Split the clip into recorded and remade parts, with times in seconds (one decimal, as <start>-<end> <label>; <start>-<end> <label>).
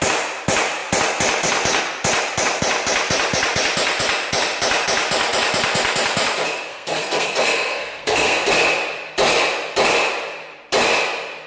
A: 0.0-6.7 recorded; 6.7-8.5 remade; 8.5-11.5 recorded